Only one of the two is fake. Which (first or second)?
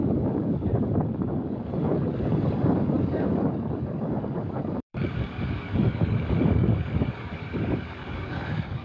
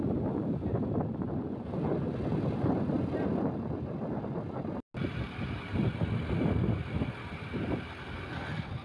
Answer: first